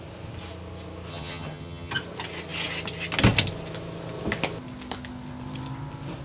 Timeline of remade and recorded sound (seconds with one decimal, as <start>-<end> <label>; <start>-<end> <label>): 0.0-1.1 recorded; 1.1-1.9 remade; 1.9-6.2 recorded